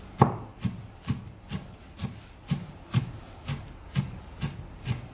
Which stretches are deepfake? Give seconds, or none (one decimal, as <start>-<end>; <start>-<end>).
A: none